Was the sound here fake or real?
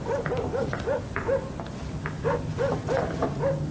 real